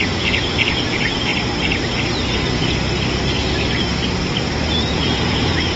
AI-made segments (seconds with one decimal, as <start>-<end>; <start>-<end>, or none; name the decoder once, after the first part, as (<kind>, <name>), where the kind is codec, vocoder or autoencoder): 0.0-1.3 (vocoder, Vocos); 4.7-5.8